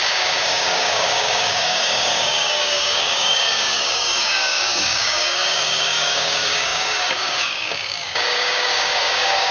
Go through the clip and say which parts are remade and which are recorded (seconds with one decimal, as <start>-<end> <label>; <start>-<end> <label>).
0.0-9.5 remade